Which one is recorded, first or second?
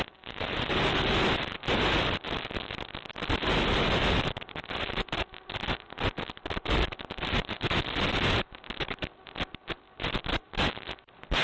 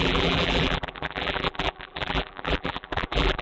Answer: first